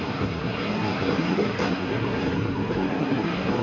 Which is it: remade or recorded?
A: remade